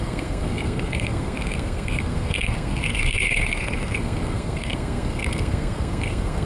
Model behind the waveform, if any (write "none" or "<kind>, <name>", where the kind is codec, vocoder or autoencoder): codec, SNAC